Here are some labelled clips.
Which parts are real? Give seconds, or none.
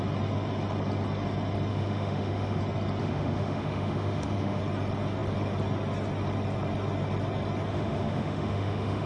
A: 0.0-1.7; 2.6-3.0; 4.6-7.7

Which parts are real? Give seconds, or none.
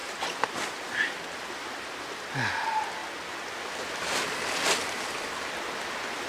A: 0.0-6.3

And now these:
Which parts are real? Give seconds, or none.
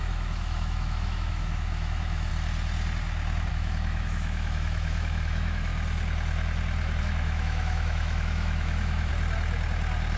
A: 2.3-3.5; 5.7-7.0; 9.1-10.2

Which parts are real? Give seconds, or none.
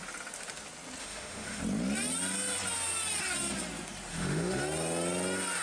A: 0.0-1.0; 1.6-4.1; 4.6-5.6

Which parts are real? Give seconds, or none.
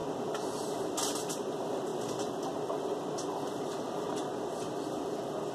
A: 0.0-5.5